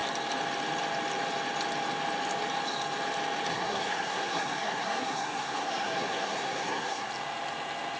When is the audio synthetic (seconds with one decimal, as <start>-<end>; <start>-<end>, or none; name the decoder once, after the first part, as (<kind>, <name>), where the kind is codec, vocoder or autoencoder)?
3.5-7.1 (codec, SNAC)